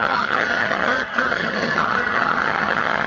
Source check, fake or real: fake